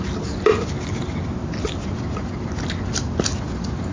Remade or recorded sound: recorded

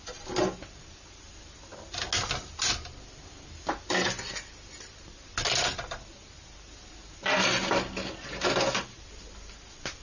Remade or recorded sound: recorded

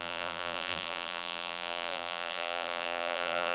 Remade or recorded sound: remade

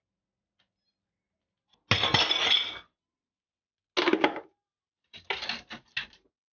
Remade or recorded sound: recorded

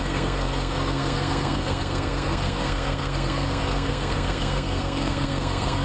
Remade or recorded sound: remade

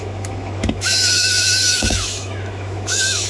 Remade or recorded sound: remade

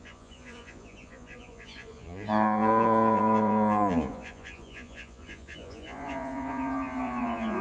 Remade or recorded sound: remade